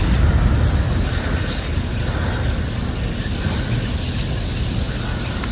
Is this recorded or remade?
recorded